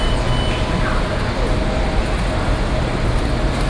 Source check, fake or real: real